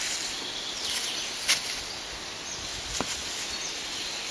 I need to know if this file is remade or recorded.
recorded